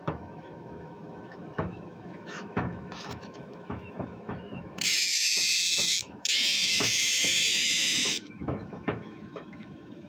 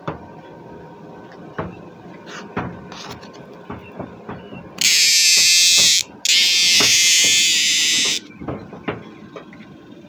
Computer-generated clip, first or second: first